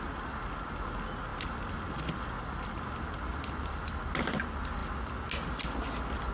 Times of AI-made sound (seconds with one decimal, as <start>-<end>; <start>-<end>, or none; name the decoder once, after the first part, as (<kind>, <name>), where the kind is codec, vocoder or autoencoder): 1.3-4.0 (vocoder, BigVGAN v2)